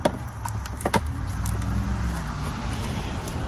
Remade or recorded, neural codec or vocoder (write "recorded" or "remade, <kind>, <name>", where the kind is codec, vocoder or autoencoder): recorded